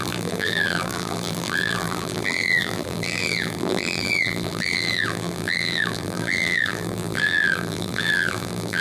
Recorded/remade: remade